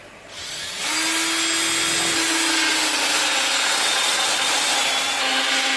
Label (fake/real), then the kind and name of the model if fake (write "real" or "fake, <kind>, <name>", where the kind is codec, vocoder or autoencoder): real